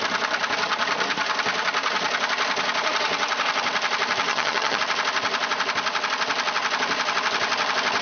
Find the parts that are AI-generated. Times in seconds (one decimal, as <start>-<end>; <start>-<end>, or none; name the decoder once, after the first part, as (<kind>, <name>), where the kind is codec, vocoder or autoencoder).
4.3-4.8 (vocoder, HiFi-GAN)

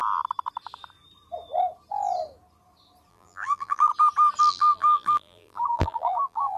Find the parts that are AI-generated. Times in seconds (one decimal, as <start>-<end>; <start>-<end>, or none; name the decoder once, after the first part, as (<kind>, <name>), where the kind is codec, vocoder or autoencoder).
3.1-3.9 (vocoder, BigVGAN v2); 4.4-6.6

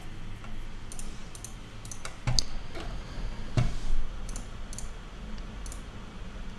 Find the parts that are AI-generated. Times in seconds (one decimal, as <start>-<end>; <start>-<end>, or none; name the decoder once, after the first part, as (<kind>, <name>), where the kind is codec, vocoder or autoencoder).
none

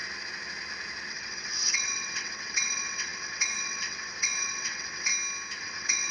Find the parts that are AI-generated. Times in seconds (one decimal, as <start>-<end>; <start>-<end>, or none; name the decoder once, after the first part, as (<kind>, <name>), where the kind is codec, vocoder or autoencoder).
1.1-5.1 (vocoder, WaveNeXt); 5.6-6.1

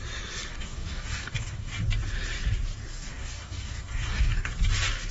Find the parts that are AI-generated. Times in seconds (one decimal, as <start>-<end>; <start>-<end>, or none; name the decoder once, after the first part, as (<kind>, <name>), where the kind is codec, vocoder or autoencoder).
0.5-1.7 (codec, DAC); 2.9-4.5